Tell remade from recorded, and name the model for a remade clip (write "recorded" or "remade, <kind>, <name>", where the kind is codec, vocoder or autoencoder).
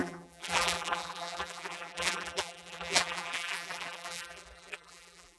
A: remade, vocoder, BigVGAN v2